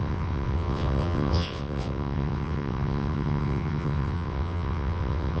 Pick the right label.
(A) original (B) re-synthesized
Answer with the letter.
B